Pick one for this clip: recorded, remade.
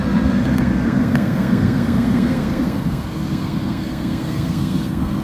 remade